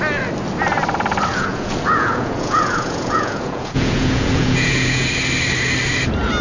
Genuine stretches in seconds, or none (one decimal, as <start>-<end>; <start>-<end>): 0.0-1.3; 5.1-6.4